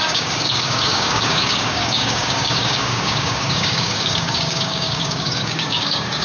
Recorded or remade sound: remade